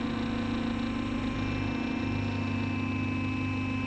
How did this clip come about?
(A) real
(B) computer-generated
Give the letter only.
A